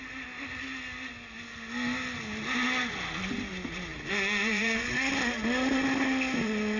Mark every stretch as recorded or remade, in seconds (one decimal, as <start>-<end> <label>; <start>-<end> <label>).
0.0-3.9 recorded; 3.9-4.9 remade; 4.9-6.8 recorded